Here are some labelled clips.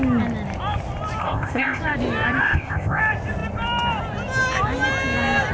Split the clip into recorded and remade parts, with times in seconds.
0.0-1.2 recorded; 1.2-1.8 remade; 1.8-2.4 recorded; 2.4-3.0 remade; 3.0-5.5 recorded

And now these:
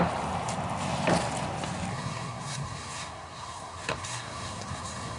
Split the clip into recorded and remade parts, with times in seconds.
0.0-1.9 recorded; 1.9-5.2 remade

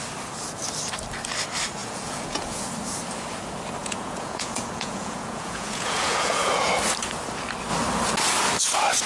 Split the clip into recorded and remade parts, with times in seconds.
0.0-1.8 recorded; 1.8-2.7 remade; 2.7-3.8 recorded; 3.8-6.7 remade; 6.7-9.1 recorded

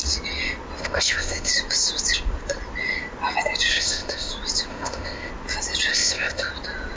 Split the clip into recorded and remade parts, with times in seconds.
0.0-0.8 recorded; 0.8-1.5 remade; 1.5-3.7 recorded; 3.7-4.3 remade; 4.3-4.7 recorded; 4.7-5.3 remade; 5.3-5.9 recorded; 5.9-6.5 remade; 6.5-7.0 recorded

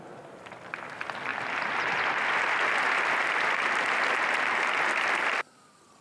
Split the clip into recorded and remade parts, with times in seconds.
0.0-6.0 recorded

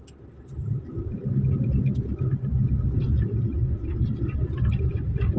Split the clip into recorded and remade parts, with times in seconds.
0.0-5.4 recorded